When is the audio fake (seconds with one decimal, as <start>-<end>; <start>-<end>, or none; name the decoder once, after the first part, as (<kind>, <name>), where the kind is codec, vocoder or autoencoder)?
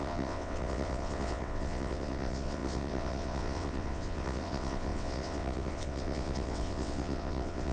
0.0-7.7 (vocoder, WaveNeXt)